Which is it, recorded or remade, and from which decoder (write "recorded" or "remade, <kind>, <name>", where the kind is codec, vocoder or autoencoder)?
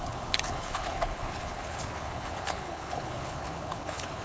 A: remade, codec, HILCodec